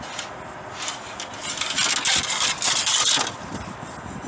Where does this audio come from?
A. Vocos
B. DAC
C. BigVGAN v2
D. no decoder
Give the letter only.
D